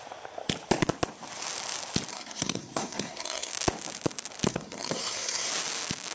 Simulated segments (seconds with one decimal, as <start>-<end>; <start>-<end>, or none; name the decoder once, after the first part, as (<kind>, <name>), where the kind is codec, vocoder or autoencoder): 2.1-3.5 (codec, SNAC); 4.5-5.5